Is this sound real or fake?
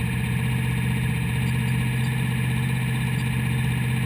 real